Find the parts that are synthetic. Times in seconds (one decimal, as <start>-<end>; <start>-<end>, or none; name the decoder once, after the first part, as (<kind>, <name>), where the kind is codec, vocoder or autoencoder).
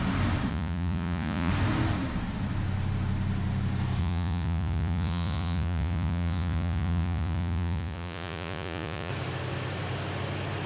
0.5-1.5 (vocoder, Vocos); 4.0-9.1